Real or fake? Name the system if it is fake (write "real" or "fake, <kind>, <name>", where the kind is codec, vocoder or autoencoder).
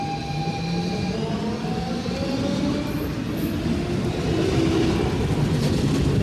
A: real